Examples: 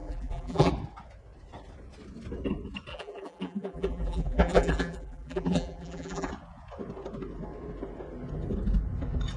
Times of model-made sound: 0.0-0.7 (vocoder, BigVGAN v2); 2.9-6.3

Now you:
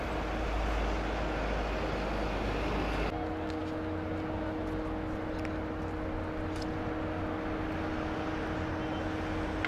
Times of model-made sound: none

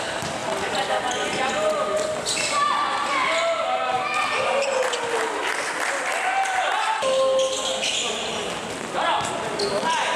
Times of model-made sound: none

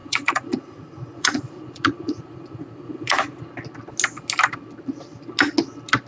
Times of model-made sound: 0.0-3.4 (vocoder, Vocos)